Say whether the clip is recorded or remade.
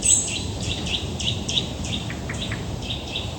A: remade